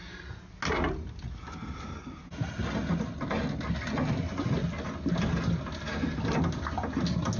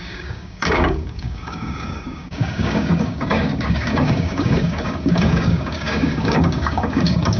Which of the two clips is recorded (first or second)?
first